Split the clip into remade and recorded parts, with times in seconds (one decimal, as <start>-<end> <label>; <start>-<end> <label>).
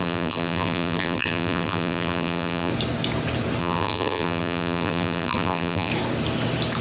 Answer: 0.0-2.7 remade; 2.7-3.6 recorded; 3.6-5.9 remade; 5.9-6.8 recorded